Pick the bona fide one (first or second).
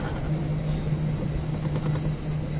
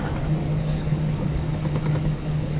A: first